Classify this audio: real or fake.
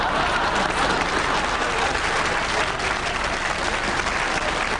real